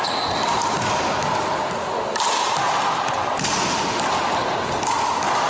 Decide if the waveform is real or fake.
real